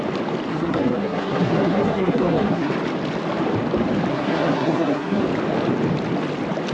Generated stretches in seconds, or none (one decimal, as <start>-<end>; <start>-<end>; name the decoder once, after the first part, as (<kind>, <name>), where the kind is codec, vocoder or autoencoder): 0.5-2.7 (codec, SNAC); 4.1-5.2